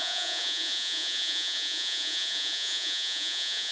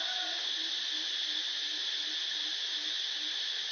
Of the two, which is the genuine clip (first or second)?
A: second